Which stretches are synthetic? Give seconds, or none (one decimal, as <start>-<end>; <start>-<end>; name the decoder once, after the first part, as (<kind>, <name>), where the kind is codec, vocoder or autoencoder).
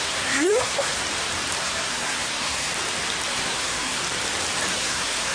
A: 0.0-1.0 (codec, SNAC); 1.6-2.7; 3.3-4.0; 4.7-5.3